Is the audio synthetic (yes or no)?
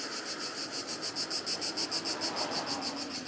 no